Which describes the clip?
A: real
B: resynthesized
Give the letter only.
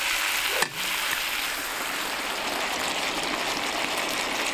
A